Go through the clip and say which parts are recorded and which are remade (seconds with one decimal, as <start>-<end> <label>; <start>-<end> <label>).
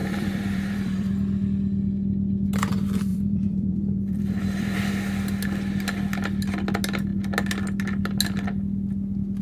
0.0-1.1 remade; 1.1-3.1 recorded; 3.1-4.9 remade; 4.9-9.4 recorded